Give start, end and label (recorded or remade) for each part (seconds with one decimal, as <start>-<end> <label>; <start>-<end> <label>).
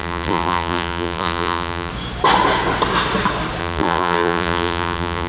0.0-1.9 remade; 1.9-3.6 recorded; 3.6-5.3 remade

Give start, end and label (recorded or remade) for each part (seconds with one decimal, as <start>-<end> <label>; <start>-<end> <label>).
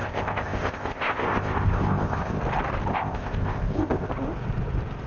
0.0-2.4 remade; 2.4-2.9 recorded; 2.9-4.1 remade; 4.1-5.1 recorded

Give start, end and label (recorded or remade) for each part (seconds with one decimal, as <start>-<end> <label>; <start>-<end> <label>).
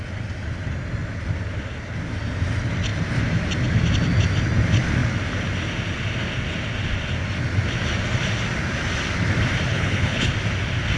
0.0-9.7 recorded; 9.7-10.3 remade; 10.3-11.0 recorded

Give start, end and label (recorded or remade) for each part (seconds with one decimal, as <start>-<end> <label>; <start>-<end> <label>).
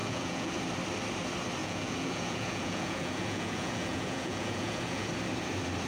0.0-0.5 remade; 0.5-1.6 recorded; 1.6-5.1 remade; 5.1-5.9 recorded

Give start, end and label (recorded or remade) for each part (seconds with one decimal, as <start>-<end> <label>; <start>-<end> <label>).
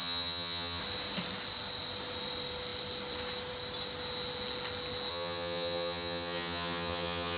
0.0-0.8 remade; 0.8-5.1 recorded; 5.1-7.4 remade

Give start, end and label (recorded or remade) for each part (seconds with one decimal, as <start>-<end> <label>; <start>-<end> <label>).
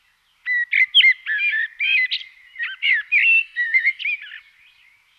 0.0-3.4 recorded; 3.4-4.0 remade; 4.0-5.2 recorded